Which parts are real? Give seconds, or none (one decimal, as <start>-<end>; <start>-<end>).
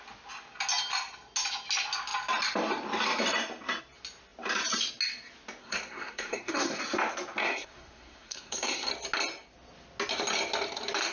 0.0-5.6; 6.8-7.4; 8.9-11.1